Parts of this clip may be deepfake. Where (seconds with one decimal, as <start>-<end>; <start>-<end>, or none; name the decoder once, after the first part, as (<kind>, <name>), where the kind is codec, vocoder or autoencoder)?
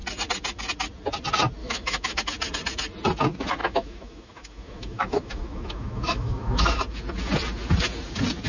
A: 1.6-2.2 (autoencoder, DAC-VAE); 3.6-6.8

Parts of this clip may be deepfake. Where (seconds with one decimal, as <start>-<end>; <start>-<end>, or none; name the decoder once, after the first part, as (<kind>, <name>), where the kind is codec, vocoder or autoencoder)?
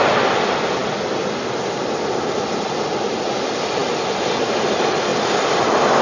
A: none